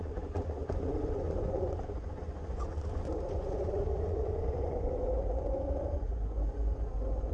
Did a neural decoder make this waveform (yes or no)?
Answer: yes